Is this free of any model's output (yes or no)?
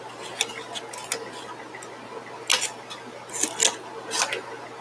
yes